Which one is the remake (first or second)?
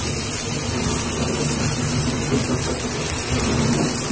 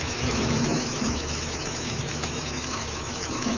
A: second